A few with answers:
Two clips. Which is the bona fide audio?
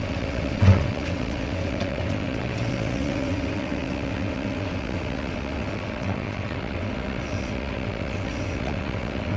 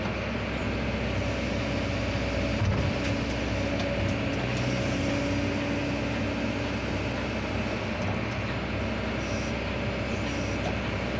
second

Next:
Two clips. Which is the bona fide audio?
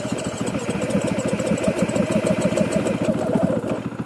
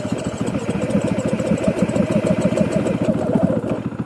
first